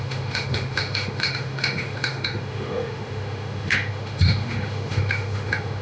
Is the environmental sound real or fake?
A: fake